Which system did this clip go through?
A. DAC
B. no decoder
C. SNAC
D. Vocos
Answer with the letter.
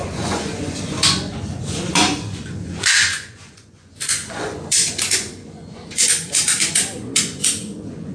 D